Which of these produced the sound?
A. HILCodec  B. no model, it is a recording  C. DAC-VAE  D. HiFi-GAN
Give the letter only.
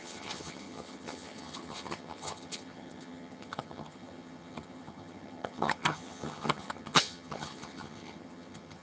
D